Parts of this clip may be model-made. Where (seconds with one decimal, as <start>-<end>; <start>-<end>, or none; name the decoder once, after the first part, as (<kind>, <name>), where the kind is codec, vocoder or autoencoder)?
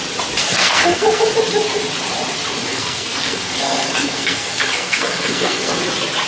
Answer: 0.4-1.3 (codec, SNAC); 2.7-5.8